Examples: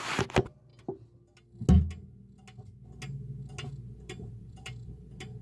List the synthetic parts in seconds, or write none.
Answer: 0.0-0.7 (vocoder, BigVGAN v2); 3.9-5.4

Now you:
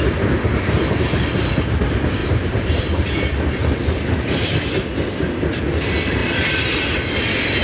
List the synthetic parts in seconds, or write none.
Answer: 0.5-1.2 (vocoder, BigVGAN v2); 2.2-2.8; 3.6-4.6; 6.2-7.1

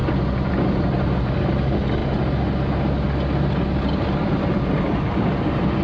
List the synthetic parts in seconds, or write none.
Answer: 0.5-2.0 (vocoder, BigVGAN v2); 4.4-5.8